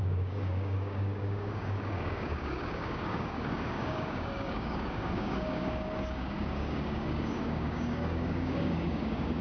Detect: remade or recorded remade